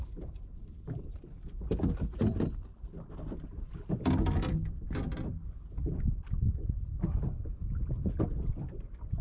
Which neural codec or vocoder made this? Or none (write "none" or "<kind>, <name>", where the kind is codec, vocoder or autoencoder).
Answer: none